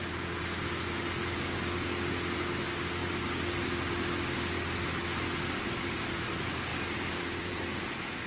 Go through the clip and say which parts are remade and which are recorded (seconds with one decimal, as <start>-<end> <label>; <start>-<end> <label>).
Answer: 0.0-3.0 recorded; 3.0-3.6 remade; 3.6-6.7 recorded; 6.7-7.8 remade; 7.8-8.3 recorded